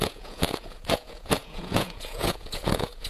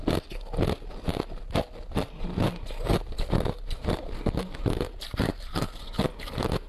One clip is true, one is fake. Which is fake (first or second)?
first